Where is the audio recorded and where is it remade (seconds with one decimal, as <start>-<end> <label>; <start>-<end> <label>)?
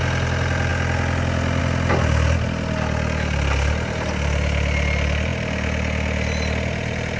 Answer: 0.0-7.2 recorded